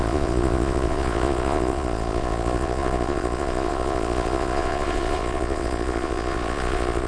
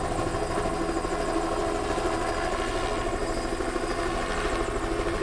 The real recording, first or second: second